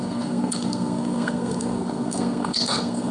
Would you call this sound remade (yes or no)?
yes